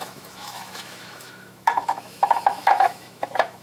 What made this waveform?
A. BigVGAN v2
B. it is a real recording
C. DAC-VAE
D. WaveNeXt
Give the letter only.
C